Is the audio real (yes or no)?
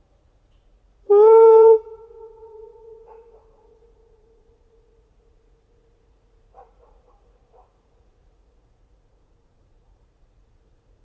no